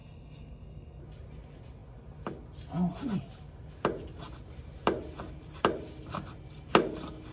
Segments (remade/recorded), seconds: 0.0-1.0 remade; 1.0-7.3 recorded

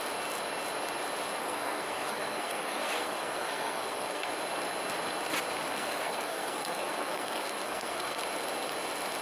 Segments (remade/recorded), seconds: 0.0-1.4 recorded; 1.4-4.3 remade; 4.3-5.7 recorded; 5.7-8.2 remade; 8.2-9.2 recorded

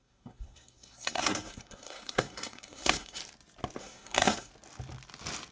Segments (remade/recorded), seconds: 0.0-3.2 remade; 3.2-3.8 recorded; 3.8-4.5 remade; 4.5-5.5 recorded

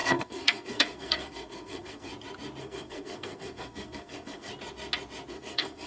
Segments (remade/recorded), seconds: 0.0-2.1 remade; 2.1-2.6 recorded; 2.6-4.5 remade; 4.5-5.3 recorded; 5.3-5.9 remade

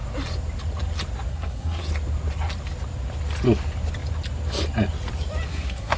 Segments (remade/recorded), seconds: 0.0-1.3 recorded; 1.3-1.8 remade; 1.8-5.5 recorded; 5.5-6.0 remade

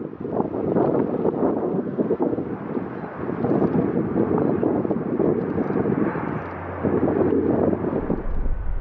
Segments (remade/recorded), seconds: 0.0-1.6 recorded; 1.6-2.5 remade; 2.5-8.8 recorded

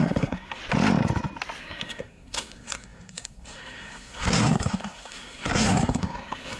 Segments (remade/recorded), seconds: 0.0-0.6 remade; 0.6-1.6 recorded; 1.6-6.6 remade

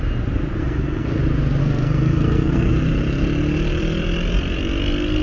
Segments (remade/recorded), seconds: 0.0-0.6 recorded; 0.6-1.2 remade; 1.2-1.6 recorded; 1.6-2.7 remade; 2.7-5.2 recorded